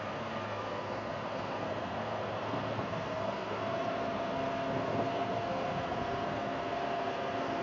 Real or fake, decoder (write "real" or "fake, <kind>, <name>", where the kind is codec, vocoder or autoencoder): fake, codec, SNAC